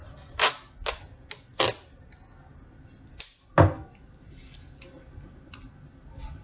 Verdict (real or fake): real